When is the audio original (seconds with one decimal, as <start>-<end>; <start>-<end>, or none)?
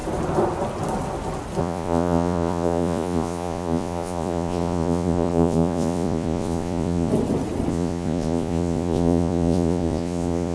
0.0-1.6; 7.1-7.7